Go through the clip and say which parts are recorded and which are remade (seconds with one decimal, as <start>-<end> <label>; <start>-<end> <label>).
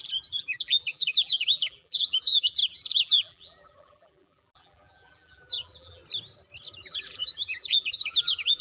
0.0-6.0 remade; 6.0-6.8 recorded; 6.8-8.6 remade